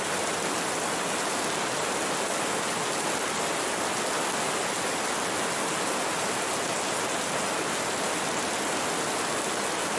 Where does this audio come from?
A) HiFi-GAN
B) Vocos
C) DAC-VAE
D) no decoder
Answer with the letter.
D